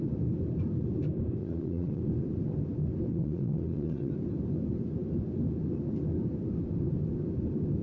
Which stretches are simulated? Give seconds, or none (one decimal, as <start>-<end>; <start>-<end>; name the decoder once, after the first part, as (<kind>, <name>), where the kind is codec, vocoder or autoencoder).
1.4-2.0 (vocoder, Vocos); 3.1-4.1